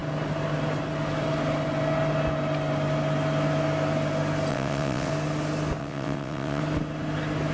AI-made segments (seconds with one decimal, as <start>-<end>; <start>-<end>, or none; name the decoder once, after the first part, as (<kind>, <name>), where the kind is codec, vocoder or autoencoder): 4.5-5.1 (vocoder, WaveNeXt); 5.8-6.6